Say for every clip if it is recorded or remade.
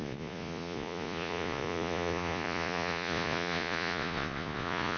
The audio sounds remade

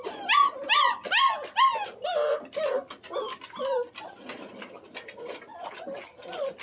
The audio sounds recorded